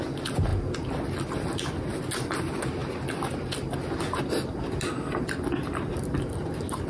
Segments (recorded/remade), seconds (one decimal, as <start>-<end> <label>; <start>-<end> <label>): 0.0-6.9 recorded